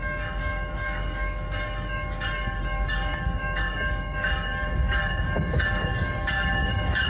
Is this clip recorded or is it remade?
remade